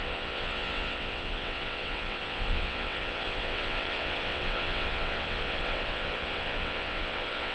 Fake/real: fake